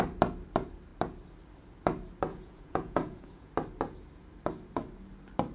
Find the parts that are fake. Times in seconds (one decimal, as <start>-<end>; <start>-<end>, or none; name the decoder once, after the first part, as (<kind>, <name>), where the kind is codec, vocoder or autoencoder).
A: 2.3-3.5 (vocoder, Vocos)